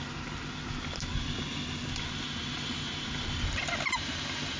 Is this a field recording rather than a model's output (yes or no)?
yes